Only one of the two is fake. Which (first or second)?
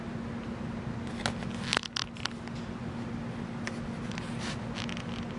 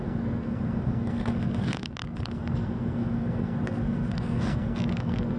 second